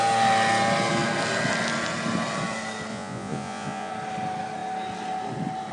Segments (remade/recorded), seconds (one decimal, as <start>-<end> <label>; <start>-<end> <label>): 0.0-2.9 recorded; 2.9-3.9 remade; 3.9-5.7 recorded